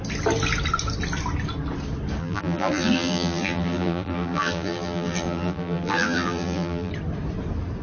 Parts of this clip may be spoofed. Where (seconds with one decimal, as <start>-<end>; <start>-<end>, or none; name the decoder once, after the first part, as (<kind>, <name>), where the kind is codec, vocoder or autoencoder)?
2.2-6.9 (vocoder, BigVGAN v2)